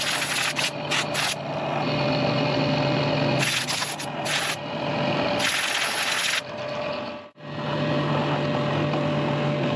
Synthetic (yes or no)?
no